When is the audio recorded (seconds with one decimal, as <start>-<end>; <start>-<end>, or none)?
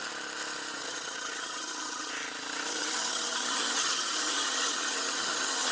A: 0.0-0.8; 2.1-2.7